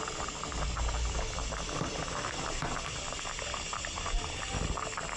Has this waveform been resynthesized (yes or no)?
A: no